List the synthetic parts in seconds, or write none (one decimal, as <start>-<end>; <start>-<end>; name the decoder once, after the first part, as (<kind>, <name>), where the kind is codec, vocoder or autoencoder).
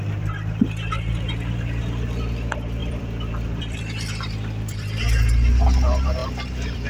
2.8-5.0 (vocoder, BigVGAN v2); 6.2-6.9